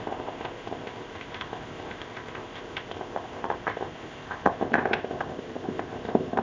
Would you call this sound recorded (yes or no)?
no